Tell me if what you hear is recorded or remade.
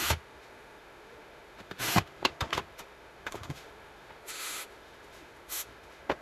remade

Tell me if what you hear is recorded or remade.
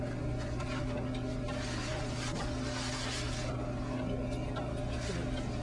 recorded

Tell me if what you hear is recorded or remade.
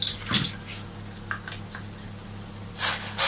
recorded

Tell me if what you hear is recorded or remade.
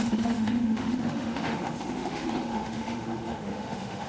remade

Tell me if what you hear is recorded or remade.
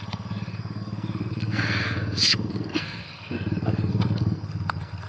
remade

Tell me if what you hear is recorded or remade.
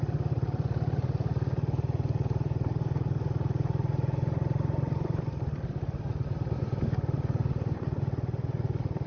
recorded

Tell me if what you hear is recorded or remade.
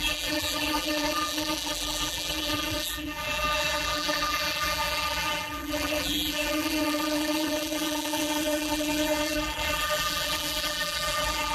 remade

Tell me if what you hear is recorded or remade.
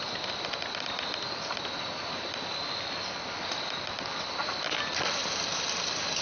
recorded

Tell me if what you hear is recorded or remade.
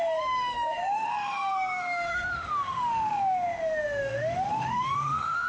remade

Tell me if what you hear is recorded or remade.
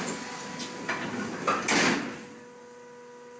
recorded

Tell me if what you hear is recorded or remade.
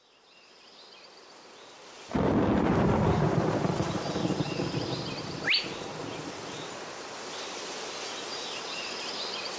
recorded